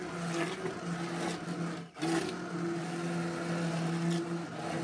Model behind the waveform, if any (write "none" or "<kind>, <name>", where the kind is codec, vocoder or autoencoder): none